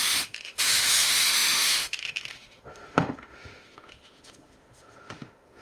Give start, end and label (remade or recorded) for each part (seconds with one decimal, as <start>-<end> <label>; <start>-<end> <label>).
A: 0.0-5.6 remade